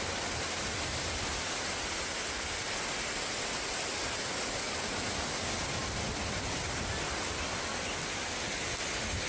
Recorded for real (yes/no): yes